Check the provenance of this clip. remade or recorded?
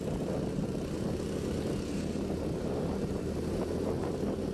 recorded